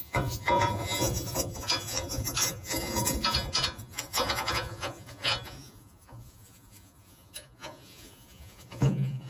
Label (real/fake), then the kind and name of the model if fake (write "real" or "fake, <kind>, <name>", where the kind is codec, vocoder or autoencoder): fake, vocoder, Vocos